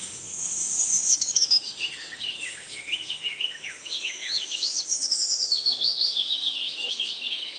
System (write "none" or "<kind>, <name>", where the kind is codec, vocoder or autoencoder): autoencoder, DAC-VAE